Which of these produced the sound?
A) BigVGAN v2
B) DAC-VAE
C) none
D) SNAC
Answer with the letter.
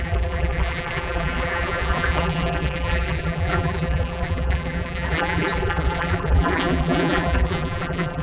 A